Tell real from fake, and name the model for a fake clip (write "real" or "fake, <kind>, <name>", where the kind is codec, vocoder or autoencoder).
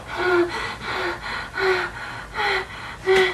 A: real